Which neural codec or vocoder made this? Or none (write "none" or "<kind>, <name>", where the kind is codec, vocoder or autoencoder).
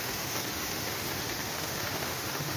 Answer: autoencoder, DAC-VAE